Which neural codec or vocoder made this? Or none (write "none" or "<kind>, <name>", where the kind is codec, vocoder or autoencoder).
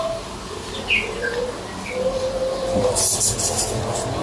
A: none